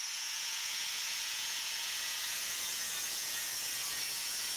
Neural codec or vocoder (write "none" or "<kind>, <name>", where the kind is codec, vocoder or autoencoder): vocoder, Vocos